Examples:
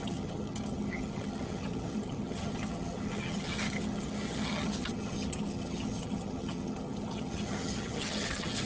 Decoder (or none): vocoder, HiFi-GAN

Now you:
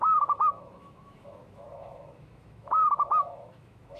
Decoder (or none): autoencoder, DAC-VAE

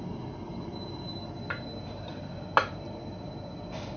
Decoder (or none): none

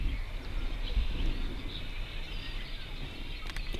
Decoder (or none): none